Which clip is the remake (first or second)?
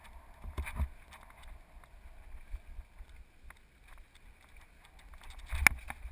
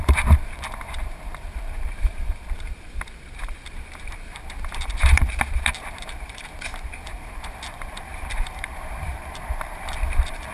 second